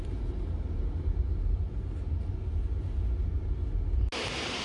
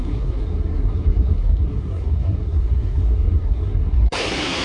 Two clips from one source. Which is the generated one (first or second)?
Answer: second